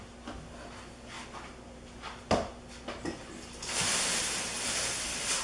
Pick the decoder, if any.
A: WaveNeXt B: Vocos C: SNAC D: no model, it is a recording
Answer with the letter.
D